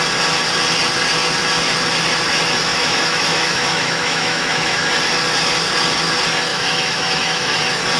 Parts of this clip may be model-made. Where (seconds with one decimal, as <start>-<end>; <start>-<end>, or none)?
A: 2.7-4.9; 6.5-7.6